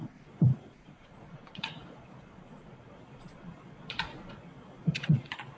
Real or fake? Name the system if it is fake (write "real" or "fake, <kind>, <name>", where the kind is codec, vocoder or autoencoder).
fake, vocoder, Vocos